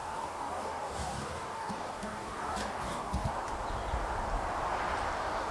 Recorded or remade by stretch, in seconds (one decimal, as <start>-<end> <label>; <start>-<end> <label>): 0.0-3.3 remade; 3.3-5.5 recorded